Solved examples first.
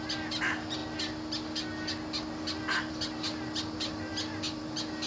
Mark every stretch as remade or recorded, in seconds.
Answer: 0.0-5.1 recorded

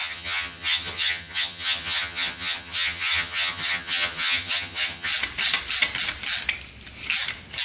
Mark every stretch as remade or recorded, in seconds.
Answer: 0.0-5.1 remade; 5.1-7.6 recorded

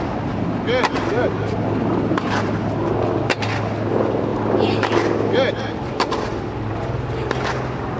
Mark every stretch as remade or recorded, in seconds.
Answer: 0.0-8.0 recorded